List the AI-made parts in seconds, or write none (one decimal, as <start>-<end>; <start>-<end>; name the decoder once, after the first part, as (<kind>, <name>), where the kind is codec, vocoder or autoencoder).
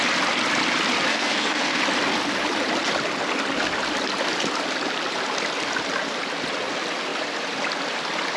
1.1-1.8 (codec, SNAC)